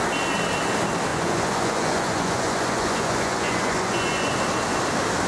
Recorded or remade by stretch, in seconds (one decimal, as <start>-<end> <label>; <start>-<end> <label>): 0.0-1.1 recorded; 1.1-4.3 remade; 4.3-5.3 recorded